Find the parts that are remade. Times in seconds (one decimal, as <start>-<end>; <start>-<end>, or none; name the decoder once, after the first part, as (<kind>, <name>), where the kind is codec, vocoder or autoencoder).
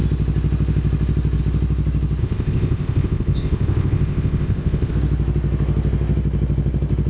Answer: 2.2-4.9 (codec, ZipCodec)